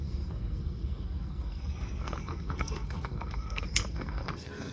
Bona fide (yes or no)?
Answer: no